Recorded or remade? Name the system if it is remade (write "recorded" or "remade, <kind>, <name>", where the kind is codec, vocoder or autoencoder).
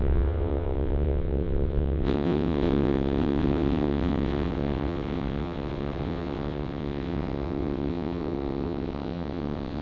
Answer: remade, vocoder, WaveNeXt